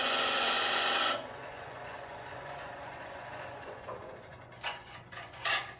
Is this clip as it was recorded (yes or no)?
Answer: no